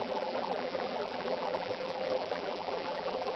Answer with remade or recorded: remade